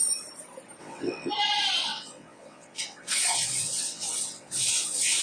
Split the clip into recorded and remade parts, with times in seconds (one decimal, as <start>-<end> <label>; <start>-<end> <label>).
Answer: 0.0-0.8 recorded; 0.8-1.3 remade; 1.3-1.8 recorded; 1.8-5.2 remade